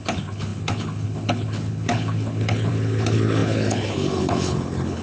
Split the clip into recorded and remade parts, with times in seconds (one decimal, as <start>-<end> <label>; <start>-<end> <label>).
0.0-5.0 remade